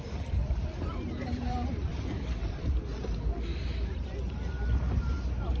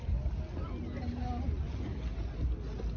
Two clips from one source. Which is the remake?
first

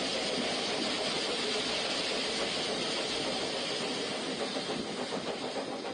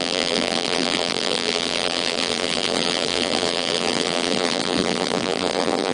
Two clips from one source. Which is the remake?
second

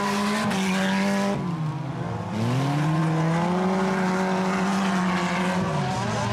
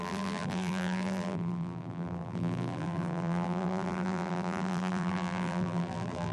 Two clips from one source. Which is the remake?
second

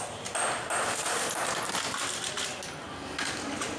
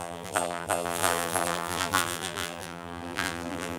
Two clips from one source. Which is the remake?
second